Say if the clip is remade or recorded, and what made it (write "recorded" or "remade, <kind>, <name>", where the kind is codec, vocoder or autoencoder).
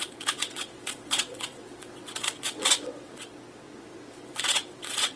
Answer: remade, vocoder, WaveNeXt